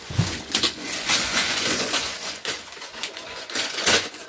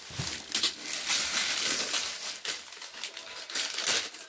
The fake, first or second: first